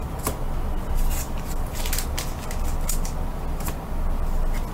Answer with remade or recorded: recorded